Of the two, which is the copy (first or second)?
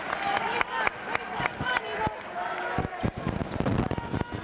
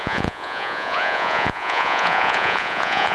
second